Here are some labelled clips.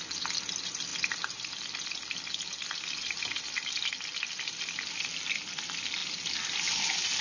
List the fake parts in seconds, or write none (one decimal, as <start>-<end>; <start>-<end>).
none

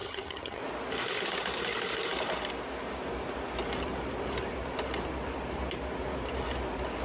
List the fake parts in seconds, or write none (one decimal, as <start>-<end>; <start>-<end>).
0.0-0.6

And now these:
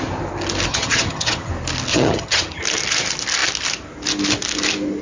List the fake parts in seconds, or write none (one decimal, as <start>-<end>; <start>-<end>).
0.7-1.5; 1.9-2.6